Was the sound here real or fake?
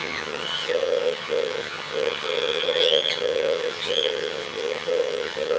fake